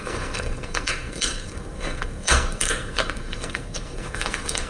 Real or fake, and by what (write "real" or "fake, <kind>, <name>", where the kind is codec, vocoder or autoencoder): fake, codec, SNAC